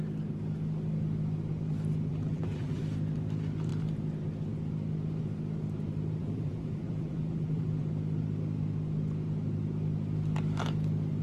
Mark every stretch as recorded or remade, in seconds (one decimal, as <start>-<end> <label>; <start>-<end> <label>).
0.0-2.1 recorded; 2.1-2.8 remade; 2.8-6.2 recorded; 6.2-7.8 remade; 7.8-11.2 recorded

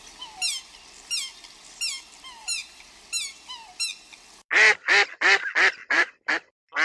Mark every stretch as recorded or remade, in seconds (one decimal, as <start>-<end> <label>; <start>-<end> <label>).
0.0-2.4 recorded; 2.4-3.0 remade; 3.0-5.8 recorded; 5.8-6.3 remade; 6.3-6.8 recorded

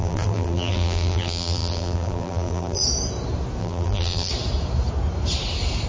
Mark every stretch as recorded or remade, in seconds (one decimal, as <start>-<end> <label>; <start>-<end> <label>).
0.0-2.8 remade; 2.8-3.6 recorded; 3.6-4.3 remade; 4.3-5.9 recorded

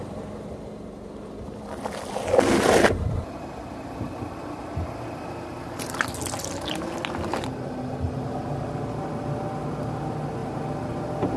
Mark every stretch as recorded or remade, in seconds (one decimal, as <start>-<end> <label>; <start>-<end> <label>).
0.0-10.4 recorded; 10.4-11.4 remade

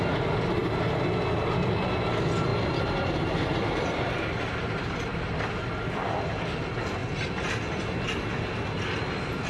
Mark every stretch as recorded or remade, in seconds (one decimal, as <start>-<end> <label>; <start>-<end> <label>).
0.0-2.5 recorded; 2.5-5.9 remade; 5.9-9.5 recorded

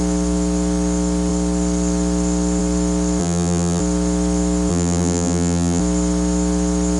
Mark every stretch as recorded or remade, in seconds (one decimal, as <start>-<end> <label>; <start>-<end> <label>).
0.0-3.2 recorded; 3.2-3.8 remade; 3.8-4.7 recorded; 4.7-5.8 remade; 5.8-7.0 recorded

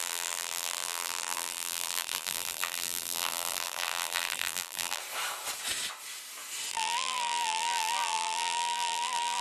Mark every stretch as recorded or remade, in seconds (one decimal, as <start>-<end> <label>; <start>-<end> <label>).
0.0-5.0 remade; 5.0-6.7 recorded; 6.7-9.4 remade